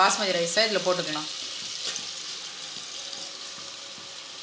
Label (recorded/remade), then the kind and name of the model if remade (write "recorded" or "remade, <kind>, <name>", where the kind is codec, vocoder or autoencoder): recorded